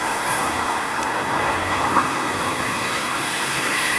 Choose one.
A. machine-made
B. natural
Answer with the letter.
A